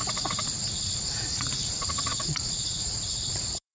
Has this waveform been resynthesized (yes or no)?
yes